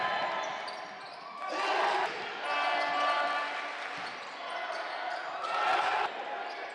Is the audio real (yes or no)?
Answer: yes